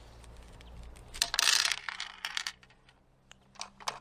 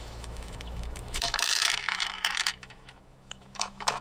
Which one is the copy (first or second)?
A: second